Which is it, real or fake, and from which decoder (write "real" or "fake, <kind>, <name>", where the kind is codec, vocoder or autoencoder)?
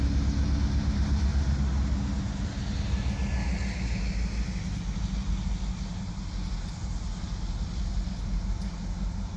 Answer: real